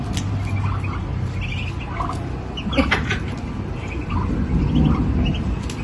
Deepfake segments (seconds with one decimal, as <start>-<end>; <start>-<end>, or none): none